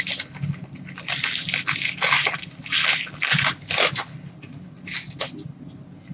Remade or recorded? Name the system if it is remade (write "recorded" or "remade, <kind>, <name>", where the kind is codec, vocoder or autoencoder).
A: recorded